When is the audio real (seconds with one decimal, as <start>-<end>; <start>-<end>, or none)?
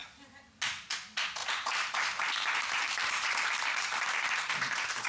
0.0-1.4; 4.5-5.1